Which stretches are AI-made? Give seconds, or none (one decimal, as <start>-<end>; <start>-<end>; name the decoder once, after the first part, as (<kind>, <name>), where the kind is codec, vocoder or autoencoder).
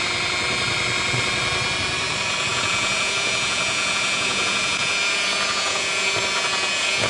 2.5-7.1 (vocoder, Vocos)